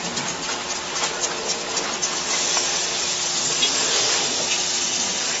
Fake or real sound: real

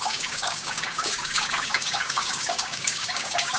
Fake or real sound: fake